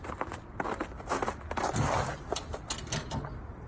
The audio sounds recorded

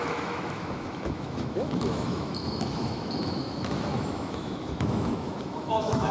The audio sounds remade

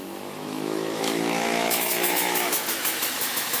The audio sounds remade